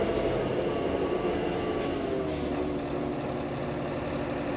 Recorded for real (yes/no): yes